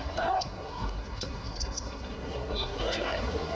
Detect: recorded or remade remade